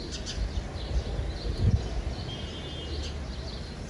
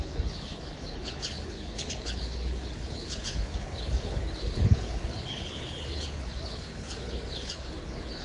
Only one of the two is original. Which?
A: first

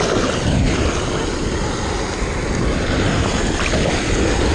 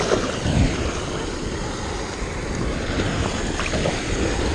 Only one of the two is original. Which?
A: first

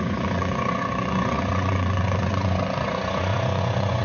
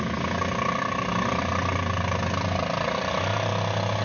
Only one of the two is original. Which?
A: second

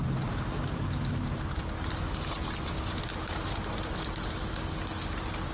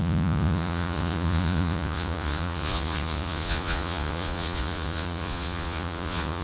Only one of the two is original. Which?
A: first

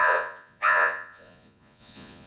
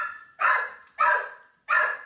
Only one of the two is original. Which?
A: second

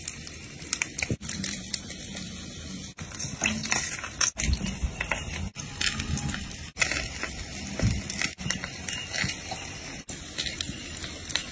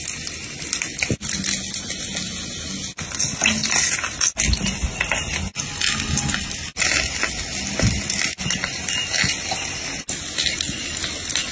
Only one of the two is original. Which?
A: second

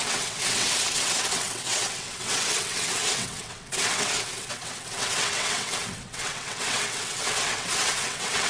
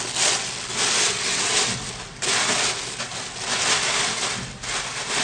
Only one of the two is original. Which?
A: second